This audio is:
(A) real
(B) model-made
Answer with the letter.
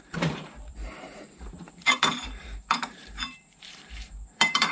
B